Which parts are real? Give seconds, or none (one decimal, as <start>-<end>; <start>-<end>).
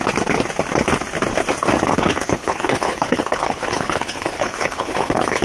0.0-1.9